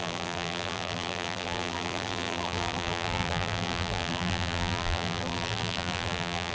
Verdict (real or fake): fake